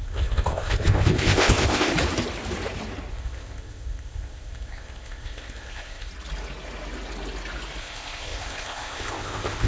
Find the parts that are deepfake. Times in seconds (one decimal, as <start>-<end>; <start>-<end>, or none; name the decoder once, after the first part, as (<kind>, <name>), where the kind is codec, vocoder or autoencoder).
0.0-1.9 (codec, ZipCodec); 3.1-6.1; 7.8-9.7